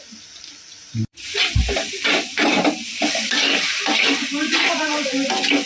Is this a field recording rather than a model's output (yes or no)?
no